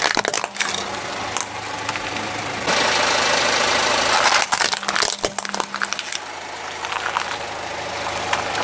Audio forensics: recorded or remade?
recorded